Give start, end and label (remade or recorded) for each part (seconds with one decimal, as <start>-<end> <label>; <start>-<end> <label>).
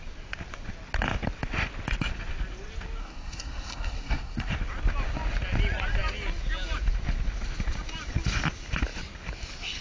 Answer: 0.0-3.0 recorded; 3.0-4.5 remade; 4.5-9.8 recorded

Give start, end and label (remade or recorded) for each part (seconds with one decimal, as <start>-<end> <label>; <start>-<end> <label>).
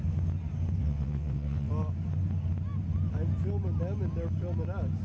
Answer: 0.0-0.8 recorded; 0.8-1.7 remade; 1.7-5.0 recorded